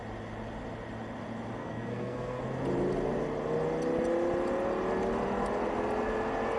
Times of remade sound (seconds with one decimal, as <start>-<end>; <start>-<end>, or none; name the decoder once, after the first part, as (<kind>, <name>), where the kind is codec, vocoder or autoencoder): 1.6-2.4 (codec, SNAC)